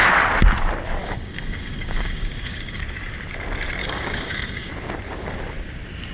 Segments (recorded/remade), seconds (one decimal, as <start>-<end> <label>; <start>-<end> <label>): 0.0-1.0 recorded; 1.0-2.8 remade; 2.8-3.8 recorded; 3.8-4.7 remade; 4.7-6.1 recorded